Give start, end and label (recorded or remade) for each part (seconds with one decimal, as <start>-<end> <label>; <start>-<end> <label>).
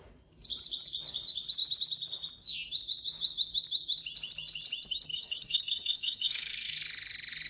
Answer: 0.0-5.1 recorded; 5.1-6.8 remade; 6.8-7.5 recorded